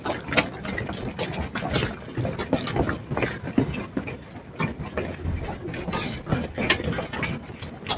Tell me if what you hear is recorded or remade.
recorded